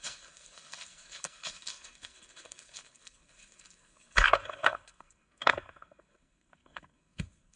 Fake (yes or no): yes